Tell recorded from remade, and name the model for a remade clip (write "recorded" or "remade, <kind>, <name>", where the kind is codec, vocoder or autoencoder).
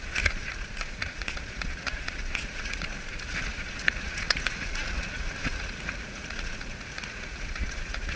remade, vocoder, Vocos